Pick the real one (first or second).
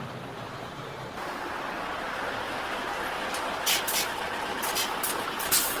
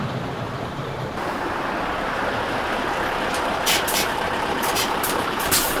first